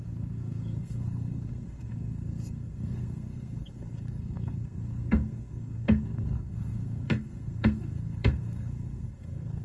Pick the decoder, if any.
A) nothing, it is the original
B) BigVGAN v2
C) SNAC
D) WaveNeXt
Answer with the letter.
C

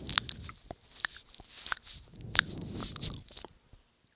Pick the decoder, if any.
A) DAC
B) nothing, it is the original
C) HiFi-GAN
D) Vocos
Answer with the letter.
B